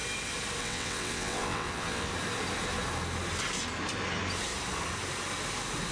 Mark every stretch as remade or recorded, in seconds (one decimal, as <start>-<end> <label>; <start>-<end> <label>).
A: 0.0-0.6 recorded; 0.6-2.1 remade; 2.1-5.9 recorded